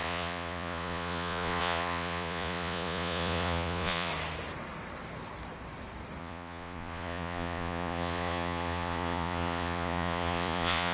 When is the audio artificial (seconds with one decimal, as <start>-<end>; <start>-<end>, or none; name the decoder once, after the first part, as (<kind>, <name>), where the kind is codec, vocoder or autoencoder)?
0.0-4.1 (vocoder, Vocos); 6.2-10.9